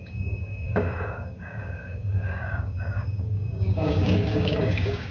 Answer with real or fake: fake